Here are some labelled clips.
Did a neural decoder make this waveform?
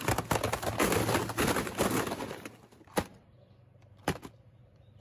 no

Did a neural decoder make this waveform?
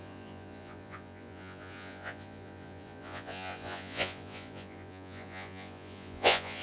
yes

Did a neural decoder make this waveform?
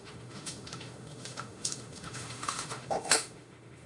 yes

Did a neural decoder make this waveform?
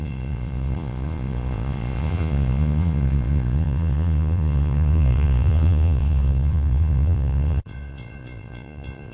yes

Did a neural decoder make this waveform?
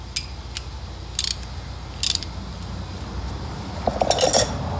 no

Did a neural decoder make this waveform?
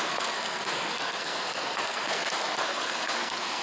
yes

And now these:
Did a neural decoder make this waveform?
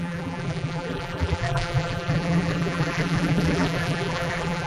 yes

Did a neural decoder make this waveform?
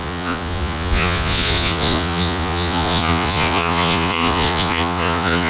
yes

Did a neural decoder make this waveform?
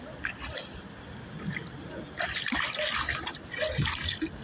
no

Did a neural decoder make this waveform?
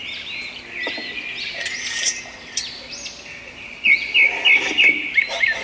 no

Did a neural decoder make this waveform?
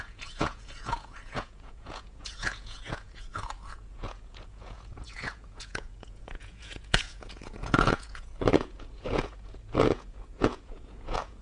yes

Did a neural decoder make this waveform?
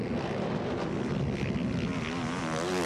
no